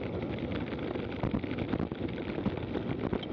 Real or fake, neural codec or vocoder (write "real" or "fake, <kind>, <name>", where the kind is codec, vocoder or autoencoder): real